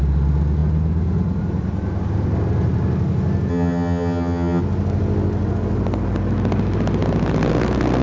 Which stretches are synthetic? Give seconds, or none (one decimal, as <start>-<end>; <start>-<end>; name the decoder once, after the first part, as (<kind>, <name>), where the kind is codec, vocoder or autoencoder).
3.5-4.6 (vocoder, HiFi-GAN)